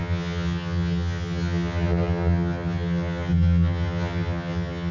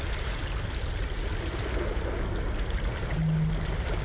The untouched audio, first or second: second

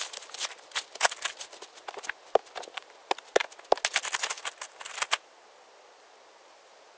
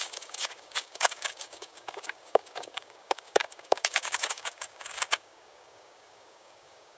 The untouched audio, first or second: first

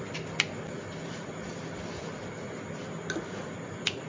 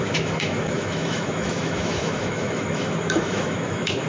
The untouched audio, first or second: first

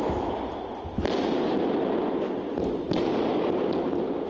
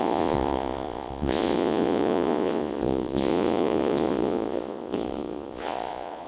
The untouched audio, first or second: first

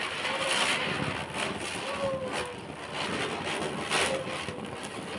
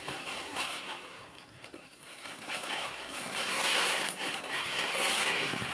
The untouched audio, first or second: first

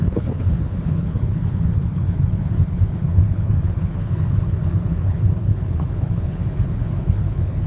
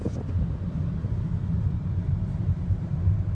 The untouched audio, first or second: second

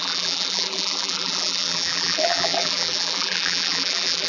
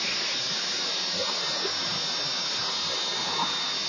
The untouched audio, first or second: second